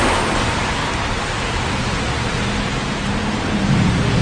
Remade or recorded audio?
recorded